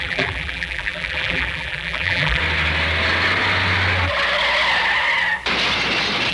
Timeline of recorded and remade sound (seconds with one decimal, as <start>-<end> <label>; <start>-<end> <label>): 0.0-2.4 remade; 2.4-6.3 recorded

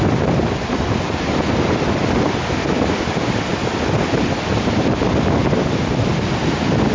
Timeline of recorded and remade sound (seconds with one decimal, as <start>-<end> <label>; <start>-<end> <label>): 0.0-6.9 remade

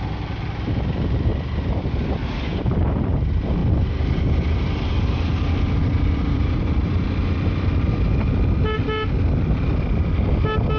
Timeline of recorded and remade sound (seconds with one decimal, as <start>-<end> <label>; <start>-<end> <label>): 0.0-10.8 recorded

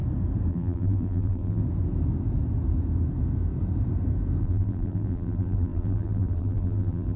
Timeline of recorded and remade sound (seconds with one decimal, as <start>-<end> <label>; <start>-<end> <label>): 0.0-0.5 recorded; 0.5-1.6 remade; 1.6-4.4 recorded; 4.4-7.2 remade

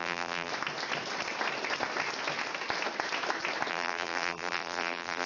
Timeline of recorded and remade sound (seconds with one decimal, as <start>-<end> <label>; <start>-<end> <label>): 0.0-0.5 remade; 0.5-3.7 recorded; 3.7-5.3 remade

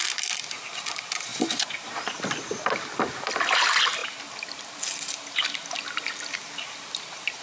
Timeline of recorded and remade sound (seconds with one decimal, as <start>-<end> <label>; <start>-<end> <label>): 0.0-7.4 recorded

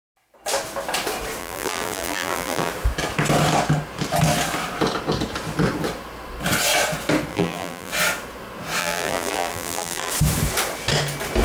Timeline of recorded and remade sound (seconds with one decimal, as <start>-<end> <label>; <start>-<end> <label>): 0.0-1.4 recorded; 1.4-2.7 remade; 2.7-7.3 recorded; 7.3-7.9 remade; 7.9-8.8 recorded; 8.8-10.1 remade; 10.1-11.4 recorded